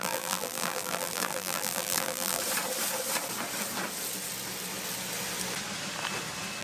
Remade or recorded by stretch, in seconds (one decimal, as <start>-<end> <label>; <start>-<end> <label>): 0.0-2.4 remade; 2.4-6.6 recorded